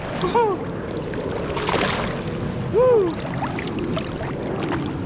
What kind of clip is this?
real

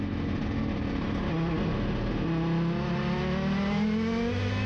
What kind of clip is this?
real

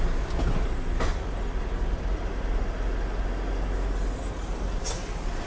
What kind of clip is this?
real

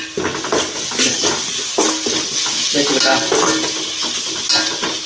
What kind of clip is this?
real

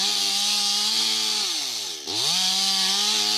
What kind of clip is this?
real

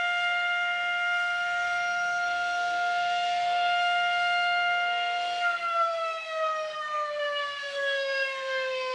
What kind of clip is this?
fake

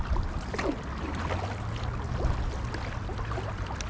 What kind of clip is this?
real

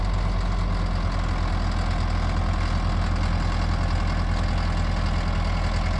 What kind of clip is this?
real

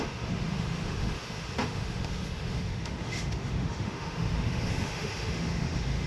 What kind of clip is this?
fake